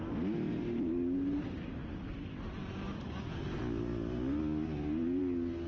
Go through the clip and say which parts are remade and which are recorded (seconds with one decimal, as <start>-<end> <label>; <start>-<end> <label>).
0.0-5.7 recorded